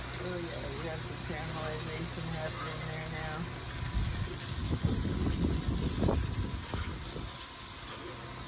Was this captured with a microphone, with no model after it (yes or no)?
yes